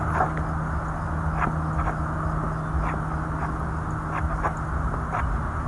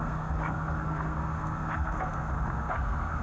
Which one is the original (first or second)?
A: first